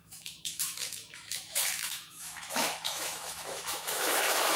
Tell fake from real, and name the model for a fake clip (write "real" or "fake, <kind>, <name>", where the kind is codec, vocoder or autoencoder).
fake, autoencoder, DAC-VAE